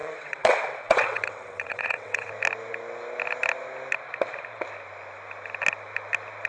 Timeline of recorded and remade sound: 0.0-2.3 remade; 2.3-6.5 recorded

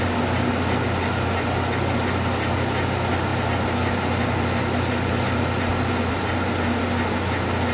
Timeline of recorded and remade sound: 0.0-7.7 recorded

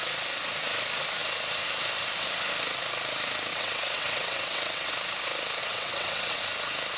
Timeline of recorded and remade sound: 0.0-3.5 recorded; 3.5-4.9 remade; 4.9-5.6 recorded; 5.6-6.4 remade; 6.4-7.0 recorded

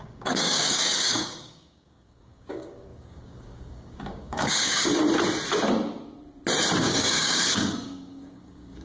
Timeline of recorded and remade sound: 0.0-4.9 remade; 4.9-6.8 recorded; 6.8-8.8 remade

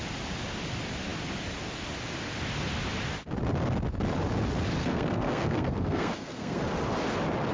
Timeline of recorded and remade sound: 0.0-4.8 recorded; 4.8-6.6 remade; 6.6-7.5 recorded

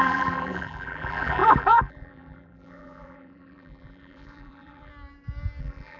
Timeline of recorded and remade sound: 0.0-4.9 remade; 4.9-5.6 recorded; 5.6-6.0 remade

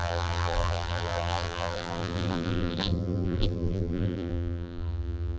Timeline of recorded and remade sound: 0.0-5.4 remade